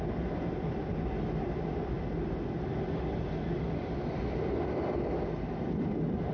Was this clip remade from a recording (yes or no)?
no